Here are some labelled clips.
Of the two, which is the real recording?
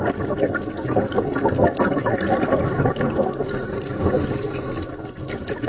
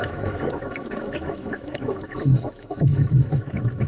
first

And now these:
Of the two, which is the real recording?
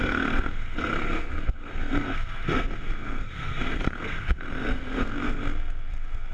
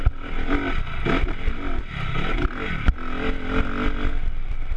second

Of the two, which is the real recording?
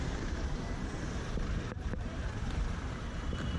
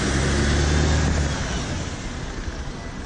second